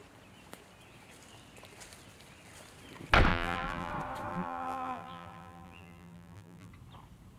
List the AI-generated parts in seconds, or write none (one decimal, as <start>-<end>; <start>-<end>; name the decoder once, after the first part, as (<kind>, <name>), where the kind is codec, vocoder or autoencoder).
3.3-3.9 (vocoder, BigVGAN v2); 4.3-6.7